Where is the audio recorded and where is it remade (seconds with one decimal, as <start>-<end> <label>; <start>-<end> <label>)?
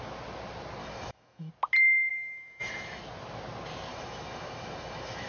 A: 0.0-0.8 recorded; 0.8-1.5 remade; 1.5-2.1 recorded; 2.1-3.0 remade; 3.0-3.9 recorded; 3.9-5.3 remade